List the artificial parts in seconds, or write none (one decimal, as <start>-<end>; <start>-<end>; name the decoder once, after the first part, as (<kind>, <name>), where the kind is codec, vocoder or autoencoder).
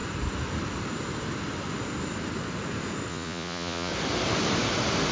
3.1-3.9 (vocoder, Vocos)